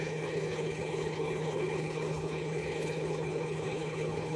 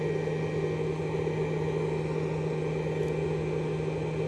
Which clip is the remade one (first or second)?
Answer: first